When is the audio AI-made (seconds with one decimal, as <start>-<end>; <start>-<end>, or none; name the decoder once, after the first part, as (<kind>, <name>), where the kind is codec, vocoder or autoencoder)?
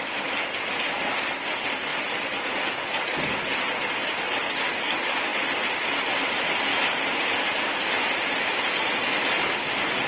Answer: none